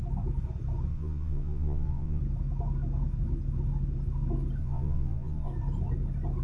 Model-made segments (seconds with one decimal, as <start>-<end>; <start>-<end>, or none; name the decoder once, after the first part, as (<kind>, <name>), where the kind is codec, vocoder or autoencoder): 0.9-2.2 (vocoder, Vocos); 4.6-5.5